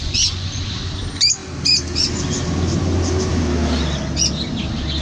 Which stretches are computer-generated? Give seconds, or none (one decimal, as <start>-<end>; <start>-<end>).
0.0-0.6